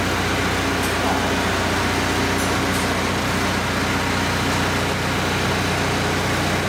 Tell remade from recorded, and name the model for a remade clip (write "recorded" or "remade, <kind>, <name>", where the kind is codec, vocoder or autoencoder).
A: recorded